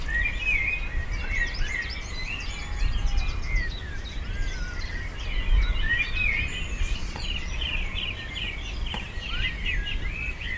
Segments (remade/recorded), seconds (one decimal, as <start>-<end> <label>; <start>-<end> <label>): 0.0-7.0 recorded; 7.0-7.9 remade; 7.9-10.6 recorded